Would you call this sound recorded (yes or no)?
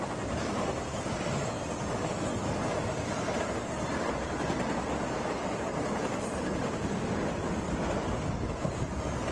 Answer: yes